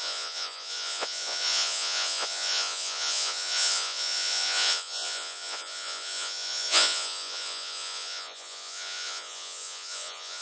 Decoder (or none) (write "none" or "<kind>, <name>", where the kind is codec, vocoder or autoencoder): vocoder, Vocos